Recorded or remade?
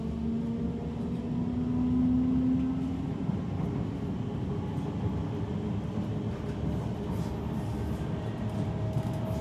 recorded